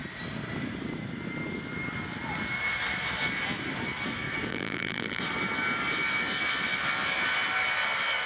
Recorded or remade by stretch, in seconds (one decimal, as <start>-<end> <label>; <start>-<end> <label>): 0.0-4.5 recorded; 4.5-5.2 remade; 5.2-8.3 recorded